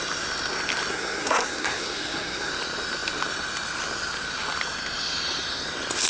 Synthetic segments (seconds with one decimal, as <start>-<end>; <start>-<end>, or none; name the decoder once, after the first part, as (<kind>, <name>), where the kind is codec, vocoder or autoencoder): 0.9-2.5 (codec, SNAC)